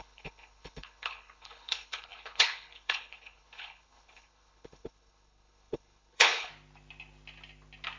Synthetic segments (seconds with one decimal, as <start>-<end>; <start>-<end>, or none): 0.0-6.5

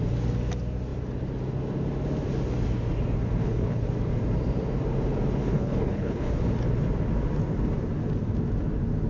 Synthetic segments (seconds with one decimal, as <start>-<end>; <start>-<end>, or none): 3.4-3.9; 5.4-6.3

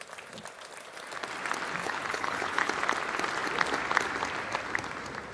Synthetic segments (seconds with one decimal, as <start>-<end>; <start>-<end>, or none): 1.8-2.7

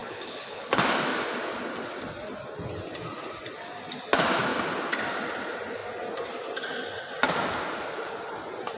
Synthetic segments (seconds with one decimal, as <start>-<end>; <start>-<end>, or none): 0.0-0.8

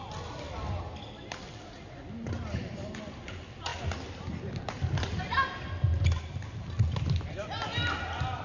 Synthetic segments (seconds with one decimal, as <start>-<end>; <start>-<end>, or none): none

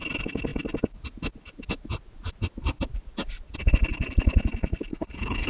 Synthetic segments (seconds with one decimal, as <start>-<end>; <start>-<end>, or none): 4.9-5.5